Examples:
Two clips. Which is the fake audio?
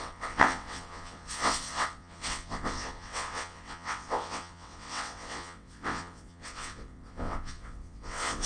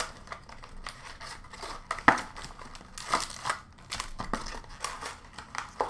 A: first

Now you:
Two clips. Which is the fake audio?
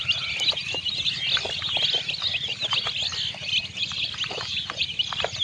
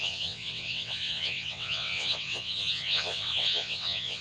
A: second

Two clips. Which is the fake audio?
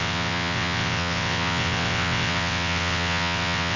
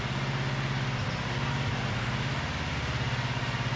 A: first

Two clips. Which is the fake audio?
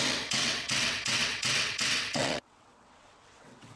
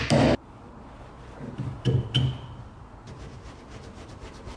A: first